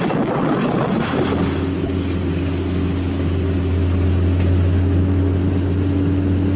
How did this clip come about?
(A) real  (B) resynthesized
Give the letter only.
A